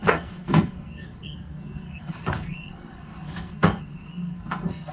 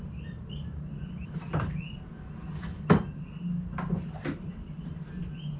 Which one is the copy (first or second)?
first